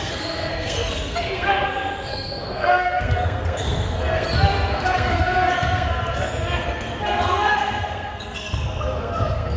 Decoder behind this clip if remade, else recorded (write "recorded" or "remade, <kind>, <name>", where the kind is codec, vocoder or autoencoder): remade, codec, SNAC